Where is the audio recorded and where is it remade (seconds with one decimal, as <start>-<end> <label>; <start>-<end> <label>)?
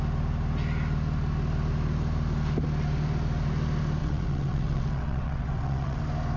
0.0-4.0 recorded; 4.0-6.0 remade; 6.0-6.4 recorded